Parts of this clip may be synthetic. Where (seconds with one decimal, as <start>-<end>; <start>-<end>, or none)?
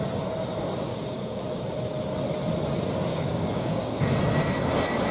0.9-1.4; 3.1-4.1